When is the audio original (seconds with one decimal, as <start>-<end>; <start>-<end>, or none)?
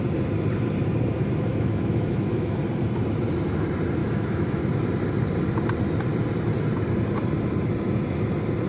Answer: 0.0-1.5; 2.6-4.0; 4.6-8.7